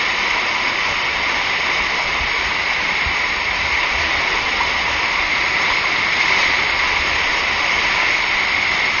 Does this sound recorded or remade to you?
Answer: recorded